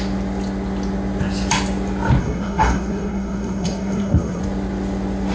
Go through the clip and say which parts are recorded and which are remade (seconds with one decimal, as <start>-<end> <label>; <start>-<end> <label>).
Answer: 0.0-2.2 recorded; 2.2-4.4 remade; 4.4-5.3 recorded